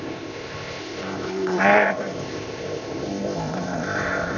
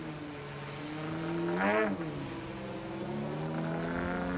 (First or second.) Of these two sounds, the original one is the second